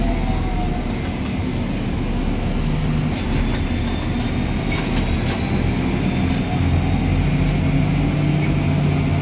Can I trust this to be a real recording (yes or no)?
yes